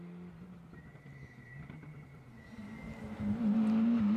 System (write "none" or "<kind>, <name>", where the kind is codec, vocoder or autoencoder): none